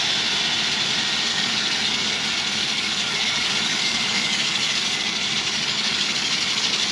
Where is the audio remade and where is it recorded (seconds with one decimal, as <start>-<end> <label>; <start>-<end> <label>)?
0.0-1.3 recorded; 1.3-2.2 remade; 2.2-2.6 recorded; 2.6-6.9 remade